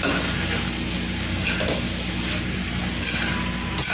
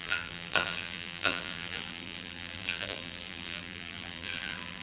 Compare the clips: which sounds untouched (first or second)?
first